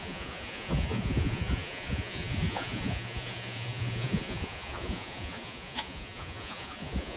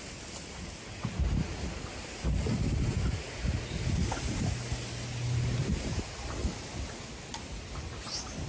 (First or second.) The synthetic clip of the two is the first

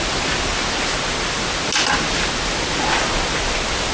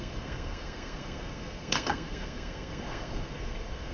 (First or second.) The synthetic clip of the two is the second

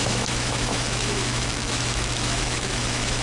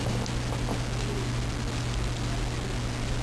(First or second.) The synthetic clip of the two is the first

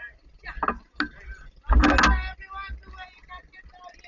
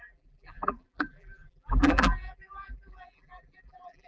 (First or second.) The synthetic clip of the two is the second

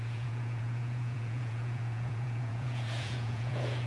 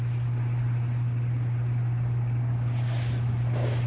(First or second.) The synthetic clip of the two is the first